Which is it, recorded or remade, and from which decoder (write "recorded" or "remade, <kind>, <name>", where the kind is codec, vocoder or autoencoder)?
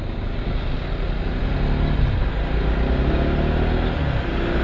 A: recorded